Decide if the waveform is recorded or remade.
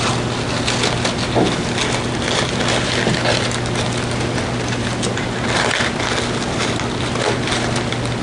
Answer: recorded